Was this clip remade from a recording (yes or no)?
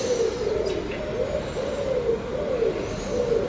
no